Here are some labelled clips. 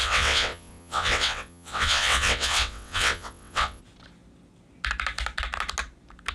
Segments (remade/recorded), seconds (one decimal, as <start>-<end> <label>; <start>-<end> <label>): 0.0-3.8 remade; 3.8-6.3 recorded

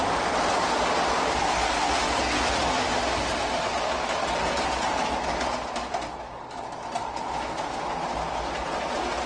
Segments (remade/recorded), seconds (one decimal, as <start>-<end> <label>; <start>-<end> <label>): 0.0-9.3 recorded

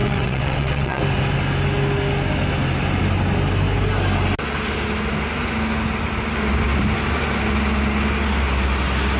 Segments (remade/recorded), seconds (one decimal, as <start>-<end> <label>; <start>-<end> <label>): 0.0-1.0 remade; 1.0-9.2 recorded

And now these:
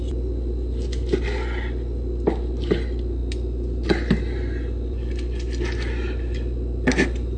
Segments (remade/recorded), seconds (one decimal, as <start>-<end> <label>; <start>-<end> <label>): 0.0-7.4 recorded

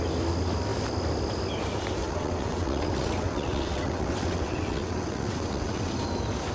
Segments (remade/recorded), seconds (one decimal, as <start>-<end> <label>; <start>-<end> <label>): 0.0-2.0 recorded; 2.0-5.9 remade; 5.9-6.5 recorded

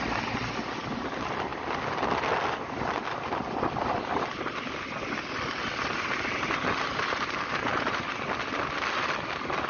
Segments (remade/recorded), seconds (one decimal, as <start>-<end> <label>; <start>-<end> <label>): 0.0-9.7 recorded